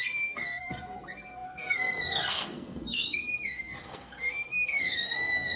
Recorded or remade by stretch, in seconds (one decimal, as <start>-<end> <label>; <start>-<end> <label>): 0.0-5.6 remade